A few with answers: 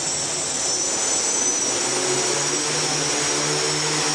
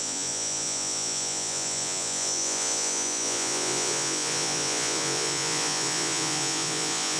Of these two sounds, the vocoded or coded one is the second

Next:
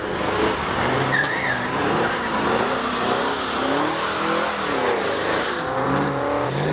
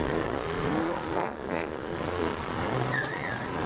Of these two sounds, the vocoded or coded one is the second